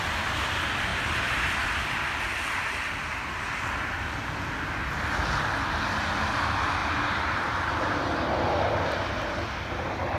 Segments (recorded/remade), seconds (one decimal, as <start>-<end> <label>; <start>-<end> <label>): 0.0-0.9 recorded; 0.9-1.5 remade; 1.5-6.8 recorded; 6.8-8.0 remade; 8.0-10.2 recorded